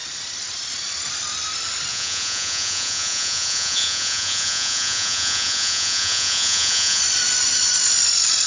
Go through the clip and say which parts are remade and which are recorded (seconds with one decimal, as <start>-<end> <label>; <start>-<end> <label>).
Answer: 0.0-1.9 recorded; 1.9-7.0 remade; 7.0-8.5 recorded